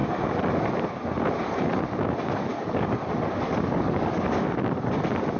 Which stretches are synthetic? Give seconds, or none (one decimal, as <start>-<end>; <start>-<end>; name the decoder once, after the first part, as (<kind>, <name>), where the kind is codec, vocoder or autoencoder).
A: 2.5-4.4 (codec, DAC)